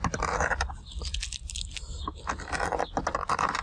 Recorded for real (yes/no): yes